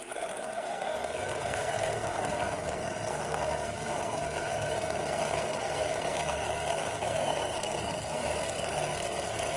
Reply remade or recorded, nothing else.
remade